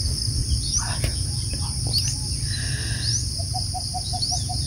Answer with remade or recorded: recorded